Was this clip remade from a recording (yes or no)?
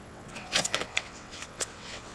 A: yes